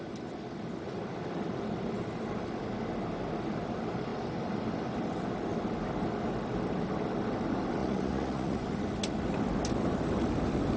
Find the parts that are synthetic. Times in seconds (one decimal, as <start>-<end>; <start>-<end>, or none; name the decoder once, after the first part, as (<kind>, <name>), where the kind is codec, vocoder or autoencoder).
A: 7.8-8.6 (vocoder, Vocos)